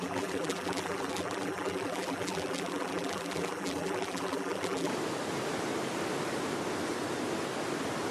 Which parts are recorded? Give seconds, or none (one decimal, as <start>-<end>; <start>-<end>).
4.9-8.1

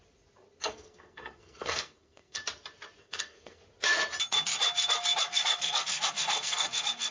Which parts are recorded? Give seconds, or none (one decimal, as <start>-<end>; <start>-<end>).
0.0-0.6; 2.4-3.0; 3.6-5.3

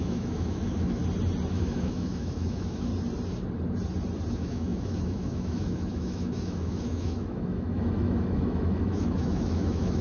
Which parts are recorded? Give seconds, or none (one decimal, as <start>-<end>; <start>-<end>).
1.0-1.5; 2.9-4.3

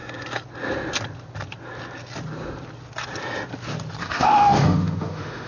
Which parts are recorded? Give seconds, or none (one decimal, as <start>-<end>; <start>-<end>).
0.0-4.0

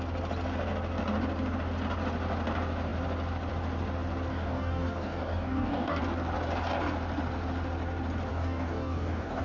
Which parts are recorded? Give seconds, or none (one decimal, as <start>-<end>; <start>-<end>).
0.0-4.3; 6.0-8.3

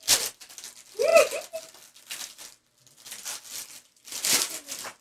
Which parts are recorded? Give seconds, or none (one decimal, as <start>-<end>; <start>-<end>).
0.0-5.0